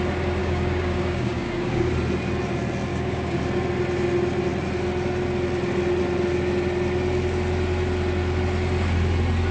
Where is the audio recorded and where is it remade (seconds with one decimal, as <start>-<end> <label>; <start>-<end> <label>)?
0.0-0.4 recorded; 0.4-1.9 remade; 1.9-2.9 recorded; 2.9-3.4 remade; 3.4-9.5 recorded